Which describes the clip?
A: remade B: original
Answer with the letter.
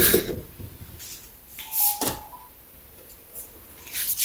A